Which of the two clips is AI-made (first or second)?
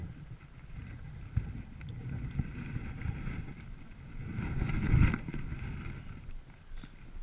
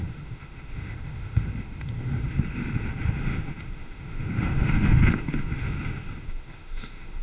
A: second